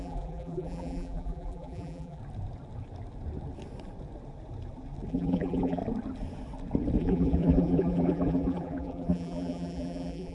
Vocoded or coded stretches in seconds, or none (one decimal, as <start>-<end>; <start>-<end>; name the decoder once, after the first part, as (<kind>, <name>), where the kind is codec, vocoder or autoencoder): 0.0-2.2 (vocoder, BigVGAN v2); 5.1-5.8; 7.0-10.3